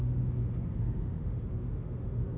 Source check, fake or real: fake